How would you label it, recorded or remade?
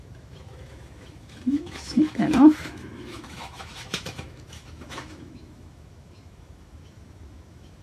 remade